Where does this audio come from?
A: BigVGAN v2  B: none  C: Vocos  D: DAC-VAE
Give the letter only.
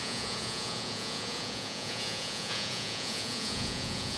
C